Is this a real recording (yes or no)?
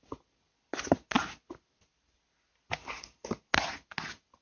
yes